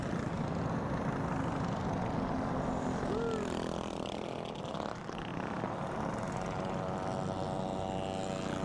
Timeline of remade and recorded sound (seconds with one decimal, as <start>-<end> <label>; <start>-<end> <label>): 0.0-8.6 recorded